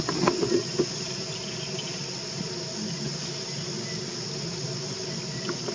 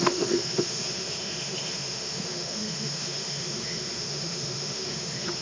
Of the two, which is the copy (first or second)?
second